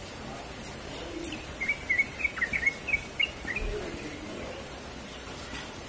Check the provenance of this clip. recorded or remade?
recorded